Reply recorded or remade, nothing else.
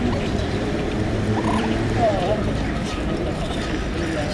remade